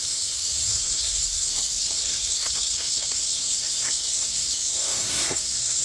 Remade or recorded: remade